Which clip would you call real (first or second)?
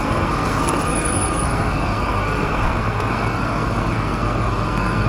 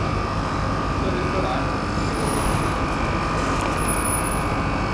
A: second